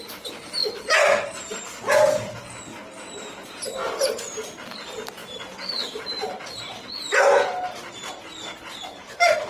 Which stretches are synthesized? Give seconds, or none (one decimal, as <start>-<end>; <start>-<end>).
9.0-9.5